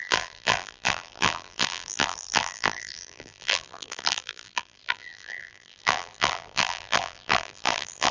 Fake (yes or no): yes